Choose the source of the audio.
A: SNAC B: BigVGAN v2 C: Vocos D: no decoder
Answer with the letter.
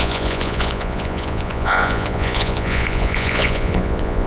C